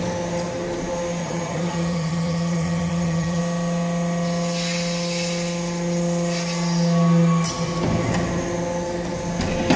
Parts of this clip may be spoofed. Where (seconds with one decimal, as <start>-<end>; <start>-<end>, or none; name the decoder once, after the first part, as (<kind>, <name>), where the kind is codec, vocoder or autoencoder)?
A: 1.2-3.4 (vocoder, HiFi-GAN)

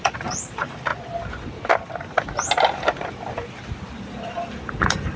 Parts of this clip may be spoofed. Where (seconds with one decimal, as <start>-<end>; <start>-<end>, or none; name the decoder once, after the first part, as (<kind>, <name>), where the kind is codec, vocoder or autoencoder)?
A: 0.0-0.9 (vocoder, BigVGAN v2); 4.0-5.2

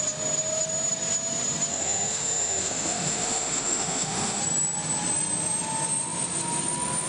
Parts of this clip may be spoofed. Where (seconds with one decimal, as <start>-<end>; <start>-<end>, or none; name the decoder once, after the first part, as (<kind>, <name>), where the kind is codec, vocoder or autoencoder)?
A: 1.7-4.4 (autoencoder, DAC-VAE)

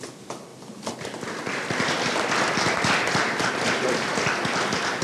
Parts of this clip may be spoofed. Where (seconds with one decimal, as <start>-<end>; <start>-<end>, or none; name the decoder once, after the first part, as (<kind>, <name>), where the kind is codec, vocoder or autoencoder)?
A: 0.5-3.5 (vocoder, BigVGAN v2)

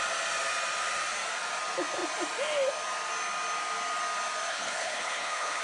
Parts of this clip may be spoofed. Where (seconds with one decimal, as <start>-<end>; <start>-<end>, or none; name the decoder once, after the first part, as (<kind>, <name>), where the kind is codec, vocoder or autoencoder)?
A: 4.5-5.6 (codec, HILCodec)

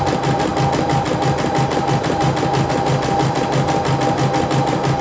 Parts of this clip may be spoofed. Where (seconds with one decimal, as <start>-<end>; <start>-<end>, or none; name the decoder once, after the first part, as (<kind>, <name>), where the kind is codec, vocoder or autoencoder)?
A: none

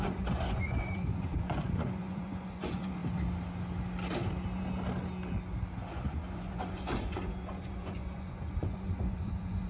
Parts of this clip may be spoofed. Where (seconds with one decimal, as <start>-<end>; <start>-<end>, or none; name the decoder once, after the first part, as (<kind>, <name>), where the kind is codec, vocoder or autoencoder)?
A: 0.0-3.0 (vocoder, Vocos); 5.9-9.7

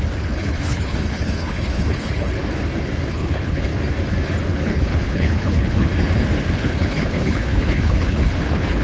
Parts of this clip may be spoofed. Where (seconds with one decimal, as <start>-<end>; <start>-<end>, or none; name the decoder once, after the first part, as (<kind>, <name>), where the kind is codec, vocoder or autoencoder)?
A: 0.0-2.4 (codec, HILCodec); 3.1-3.7; 4.5-5.9; 6.5-8.8